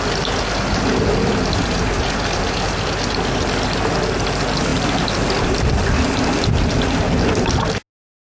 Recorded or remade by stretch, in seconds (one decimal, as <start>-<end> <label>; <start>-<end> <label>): 0.0-8.2 recorded